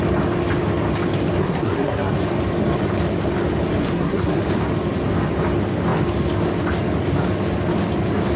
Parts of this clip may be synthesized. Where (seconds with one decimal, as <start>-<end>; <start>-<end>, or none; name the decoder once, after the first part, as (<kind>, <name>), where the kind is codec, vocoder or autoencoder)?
1.4-2.1 (codec, SNAC); 3.8-4.4